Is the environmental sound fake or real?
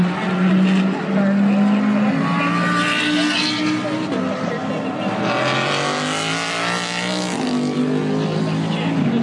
real